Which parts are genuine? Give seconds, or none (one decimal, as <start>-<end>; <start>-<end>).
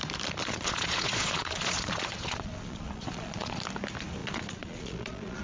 0.0-0.4; 3.6-4.2